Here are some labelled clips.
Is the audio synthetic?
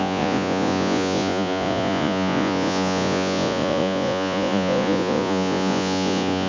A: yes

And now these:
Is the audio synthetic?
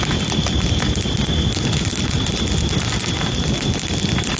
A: no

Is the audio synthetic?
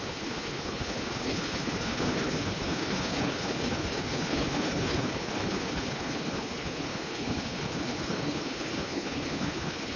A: yes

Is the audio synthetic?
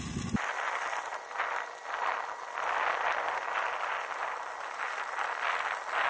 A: no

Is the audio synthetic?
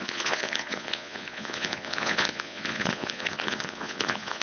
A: yes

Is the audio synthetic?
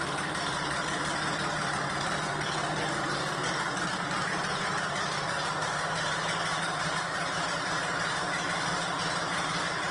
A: yes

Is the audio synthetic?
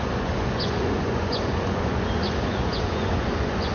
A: yes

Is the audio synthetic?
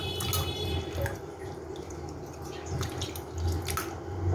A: no